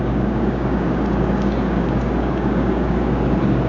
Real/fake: fake